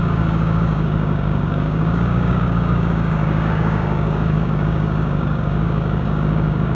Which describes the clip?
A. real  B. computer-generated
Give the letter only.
B